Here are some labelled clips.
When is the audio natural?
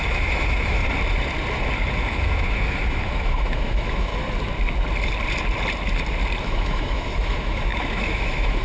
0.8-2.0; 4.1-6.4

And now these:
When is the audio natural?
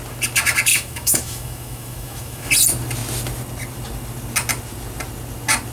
0.0-0.7; 2.5-5.7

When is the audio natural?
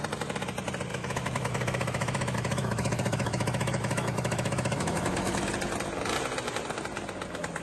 0.0-0.9; 5.5-7.6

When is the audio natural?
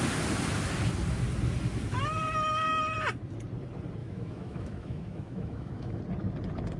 0.0-4.0; 6.0-6.8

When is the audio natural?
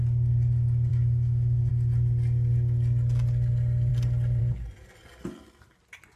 0.0-0.9; 1.7-6.2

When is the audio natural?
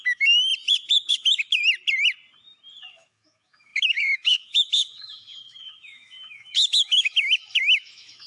0.5-1.1; 1.6-2.8